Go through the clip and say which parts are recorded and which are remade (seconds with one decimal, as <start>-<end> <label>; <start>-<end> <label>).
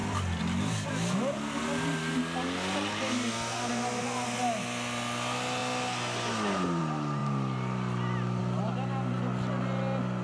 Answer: 0.0-10.2 recorded